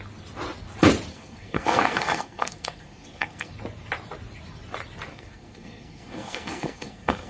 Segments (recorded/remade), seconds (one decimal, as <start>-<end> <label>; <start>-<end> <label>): 0.0-1.1 recorded; 1.1-3.5 remade; 3.5-5.1 recorded; 5.1-7.3 remade